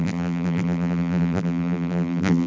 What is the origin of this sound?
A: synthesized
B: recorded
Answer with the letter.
A